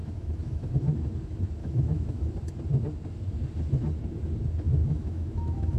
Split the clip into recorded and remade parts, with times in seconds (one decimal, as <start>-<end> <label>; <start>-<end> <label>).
0.0-0.7 remade; 0.7-1.6 recorded; 1.6-2.3 remade; 2.3-4.8 recorded; 4.8-5.8 remade